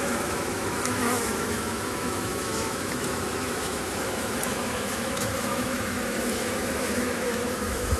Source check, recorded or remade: remade